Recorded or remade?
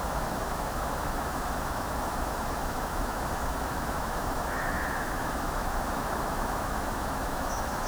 remade